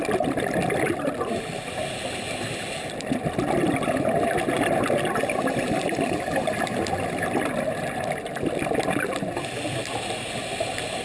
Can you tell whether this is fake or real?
real